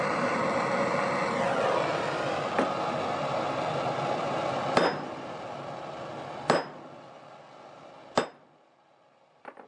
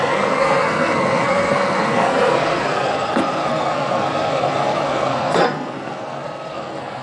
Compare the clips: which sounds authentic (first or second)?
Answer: first